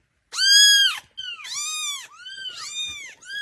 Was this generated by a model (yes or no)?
no